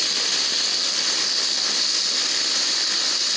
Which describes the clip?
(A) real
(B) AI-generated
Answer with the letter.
A